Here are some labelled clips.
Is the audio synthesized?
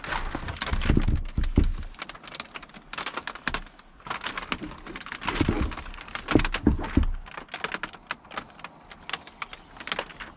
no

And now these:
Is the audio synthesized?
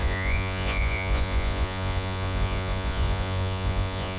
yes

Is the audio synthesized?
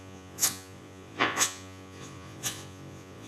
yes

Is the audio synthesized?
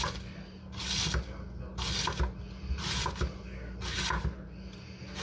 no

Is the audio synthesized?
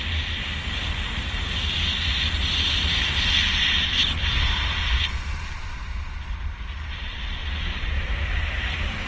no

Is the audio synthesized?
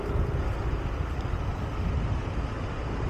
no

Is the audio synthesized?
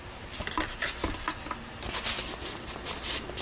no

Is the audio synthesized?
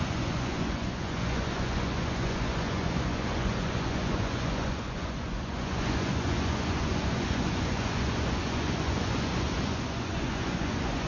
yes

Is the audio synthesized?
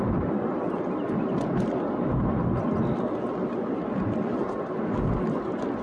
no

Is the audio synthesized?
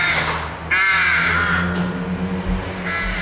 no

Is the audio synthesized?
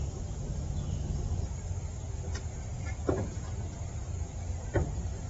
no